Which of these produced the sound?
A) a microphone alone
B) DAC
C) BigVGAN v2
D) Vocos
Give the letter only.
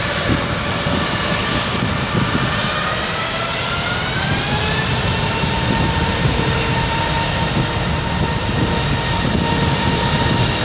A